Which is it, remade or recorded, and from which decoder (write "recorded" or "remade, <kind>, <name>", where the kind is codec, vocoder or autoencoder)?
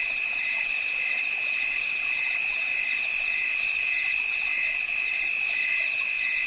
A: remade, vocoder, Vocos